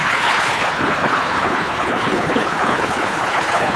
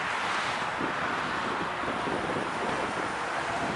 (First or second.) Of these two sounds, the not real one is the first